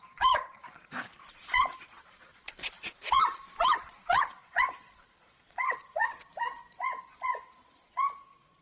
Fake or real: fake